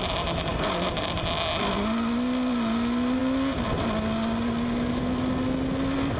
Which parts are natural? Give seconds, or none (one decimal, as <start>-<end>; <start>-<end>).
0.0-6.2